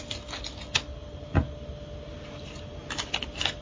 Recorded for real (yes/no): yes